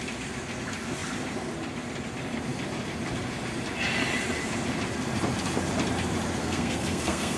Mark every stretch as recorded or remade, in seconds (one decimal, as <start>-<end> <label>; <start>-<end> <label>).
0.0-6.4 recorded; 6.4-7.4 remade